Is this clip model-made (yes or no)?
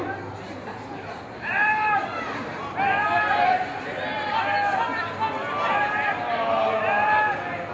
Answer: no